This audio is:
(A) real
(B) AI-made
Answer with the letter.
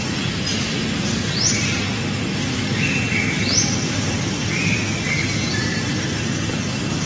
A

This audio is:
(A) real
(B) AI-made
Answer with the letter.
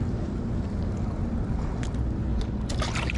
A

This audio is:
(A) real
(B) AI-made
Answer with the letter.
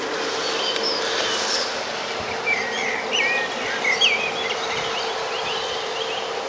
B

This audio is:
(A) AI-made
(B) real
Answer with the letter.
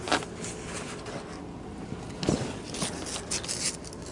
B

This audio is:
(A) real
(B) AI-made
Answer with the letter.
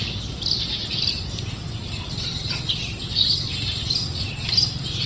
A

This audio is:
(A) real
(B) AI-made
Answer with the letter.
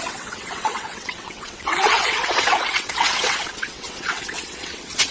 B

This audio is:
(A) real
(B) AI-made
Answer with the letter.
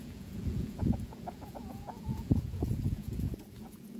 B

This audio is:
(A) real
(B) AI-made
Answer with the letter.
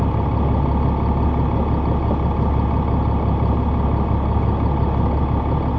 A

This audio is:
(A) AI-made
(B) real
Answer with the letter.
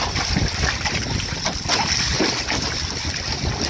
B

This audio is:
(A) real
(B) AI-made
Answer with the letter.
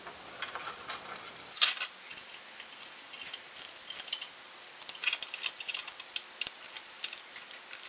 A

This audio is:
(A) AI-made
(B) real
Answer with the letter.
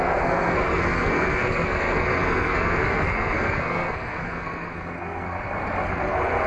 A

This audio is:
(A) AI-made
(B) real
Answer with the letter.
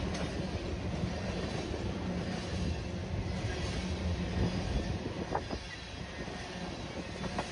B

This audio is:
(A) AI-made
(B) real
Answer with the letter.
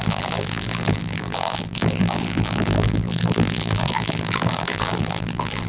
A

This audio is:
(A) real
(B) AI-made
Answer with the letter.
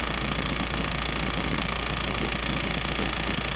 B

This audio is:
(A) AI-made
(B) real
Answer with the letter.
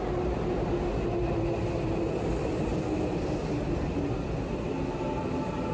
B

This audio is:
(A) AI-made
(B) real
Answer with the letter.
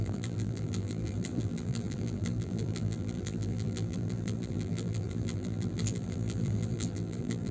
A